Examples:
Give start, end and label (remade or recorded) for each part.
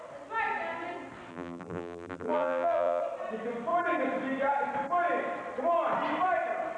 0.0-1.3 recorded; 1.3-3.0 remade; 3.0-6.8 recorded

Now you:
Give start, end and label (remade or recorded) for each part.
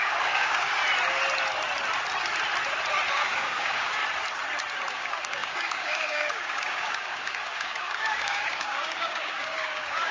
0.0-0.8 remade; 0.8-3.1 recorded; 3.1-4.0 remade; 4.0-4.9 recorded; 4.9-10.1 remade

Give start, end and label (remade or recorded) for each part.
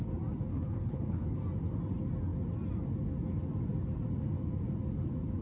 0.0-0.5 recorded; 0.5-1.4 remade; 1.4-5.4 recorded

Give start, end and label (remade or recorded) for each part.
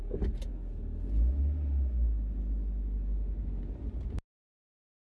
0.0-5.1 recorded